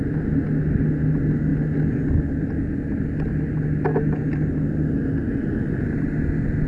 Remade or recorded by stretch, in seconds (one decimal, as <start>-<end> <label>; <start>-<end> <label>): 0.0-6.7 recorded